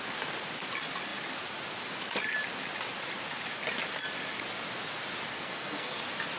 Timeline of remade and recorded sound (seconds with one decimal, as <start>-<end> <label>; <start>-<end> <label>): 0.0-5.3 recorded; 5.3-6.0 remade; 6.0-6.4 recorded